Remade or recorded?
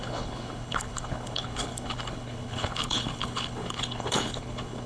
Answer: remade